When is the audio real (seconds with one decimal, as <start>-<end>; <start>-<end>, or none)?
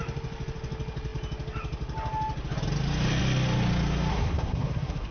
0.0-4.1